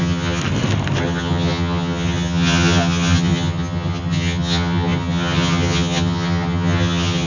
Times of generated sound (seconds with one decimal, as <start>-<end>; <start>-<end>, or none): 0.0-0.4; 1.0-7.3